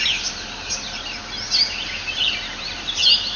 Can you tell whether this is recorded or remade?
recorded